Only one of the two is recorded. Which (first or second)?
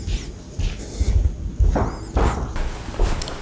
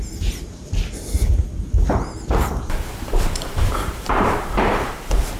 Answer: first